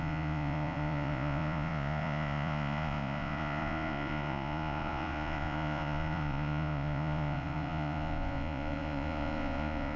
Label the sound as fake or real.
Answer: fake